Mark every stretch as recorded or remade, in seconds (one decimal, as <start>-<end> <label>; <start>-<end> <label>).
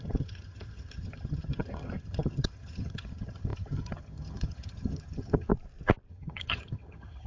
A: 0.0-5.5 remade; 5.5-6.1 recorded; 6.1-7.3 remade